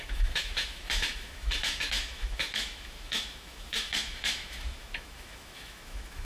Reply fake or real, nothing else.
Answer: fake